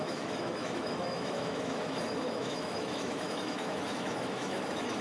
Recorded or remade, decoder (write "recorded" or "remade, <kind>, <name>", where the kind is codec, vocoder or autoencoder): remade, autoencoder, DAC-VAE